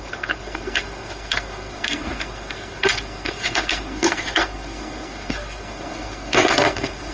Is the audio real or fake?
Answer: fake